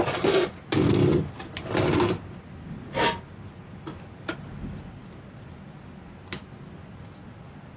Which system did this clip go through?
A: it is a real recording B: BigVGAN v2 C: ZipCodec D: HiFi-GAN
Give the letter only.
A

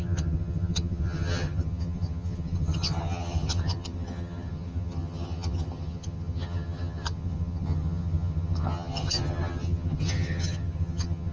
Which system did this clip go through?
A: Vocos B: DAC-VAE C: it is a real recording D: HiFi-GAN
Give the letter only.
D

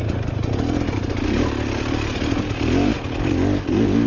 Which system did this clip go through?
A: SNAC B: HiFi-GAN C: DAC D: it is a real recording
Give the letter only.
D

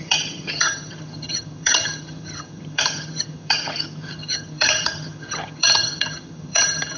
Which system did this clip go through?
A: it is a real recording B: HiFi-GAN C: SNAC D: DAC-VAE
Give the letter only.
B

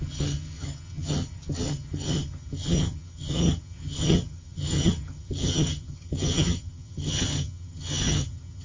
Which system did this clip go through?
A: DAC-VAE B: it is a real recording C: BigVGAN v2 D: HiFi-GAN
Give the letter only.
D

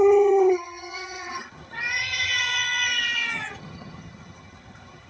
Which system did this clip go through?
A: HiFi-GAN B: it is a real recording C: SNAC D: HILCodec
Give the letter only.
A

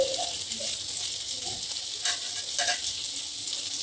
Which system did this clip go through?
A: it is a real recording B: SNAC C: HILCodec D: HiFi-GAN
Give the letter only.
A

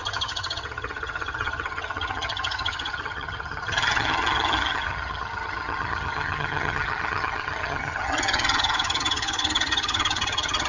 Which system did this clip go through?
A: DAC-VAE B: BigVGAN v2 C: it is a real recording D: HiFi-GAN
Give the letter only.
D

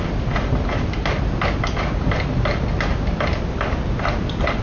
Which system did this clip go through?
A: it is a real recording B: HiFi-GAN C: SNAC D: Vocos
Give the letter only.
A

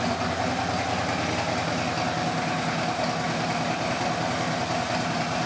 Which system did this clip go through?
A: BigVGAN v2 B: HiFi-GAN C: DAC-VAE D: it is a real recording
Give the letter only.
D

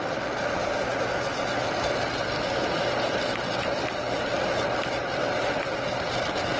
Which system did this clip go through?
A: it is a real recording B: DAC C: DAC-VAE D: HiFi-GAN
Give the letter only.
A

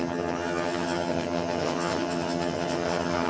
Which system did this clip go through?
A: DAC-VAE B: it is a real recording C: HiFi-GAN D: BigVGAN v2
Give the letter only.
C